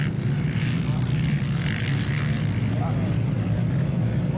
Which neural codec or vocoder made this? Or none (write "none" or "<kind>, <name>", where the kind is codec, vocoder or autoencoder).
none